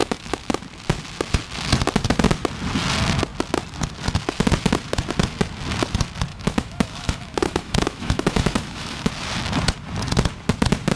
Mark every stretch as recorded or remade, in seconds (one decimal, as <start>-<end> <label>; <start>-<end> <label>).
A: 0.0-0.6 remade; 0.6-6.3 recorded; 6.3-9.1 remade; 9.1-11.0 recorded